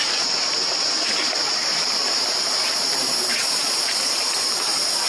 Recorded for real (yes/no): yes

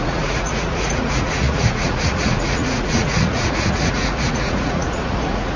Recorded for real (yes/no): no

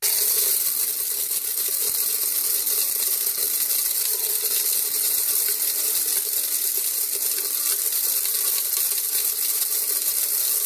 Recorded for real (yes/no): yes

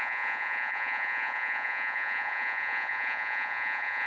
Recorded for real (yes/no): no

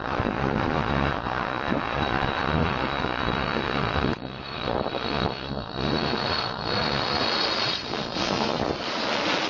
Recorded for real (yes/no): no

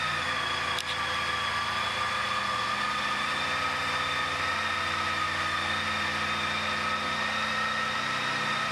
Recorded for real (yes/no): yes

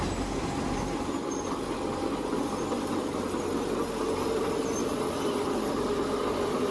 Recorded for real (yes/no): yes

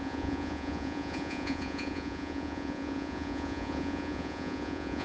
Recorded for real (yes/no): no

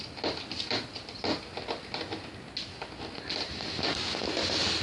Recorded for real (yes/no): yes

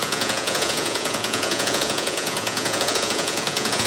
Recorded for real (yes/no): no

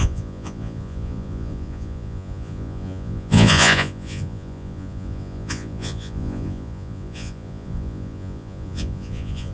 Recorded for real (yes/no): no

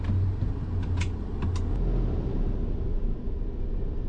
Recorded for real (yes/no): yes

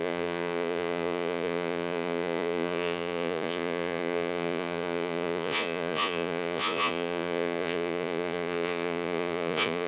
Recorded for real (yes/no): no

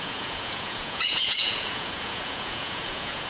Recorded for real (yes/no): no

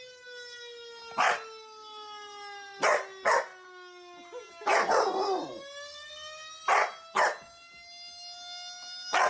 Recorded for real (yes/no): yes